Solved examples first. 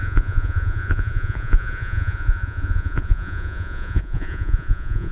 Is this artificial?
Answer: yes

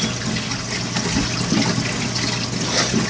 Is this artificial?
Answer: no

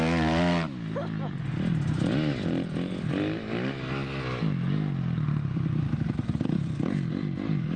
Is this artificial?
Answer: no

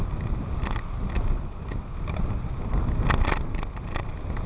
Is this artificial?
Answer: no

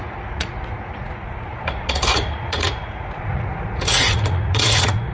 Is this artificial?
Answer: yes